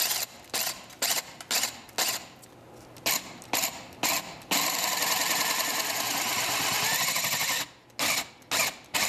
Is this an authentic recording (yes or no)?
yes